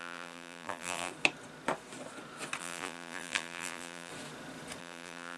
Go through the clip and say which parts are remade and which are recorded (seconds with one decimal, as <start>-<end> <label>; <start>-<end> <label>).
0.0-1.1 remade; 1.1-2.6 recorded; 2.6-4.1 remade; 4.1-4.8 recorded; 4.8-5.4 remade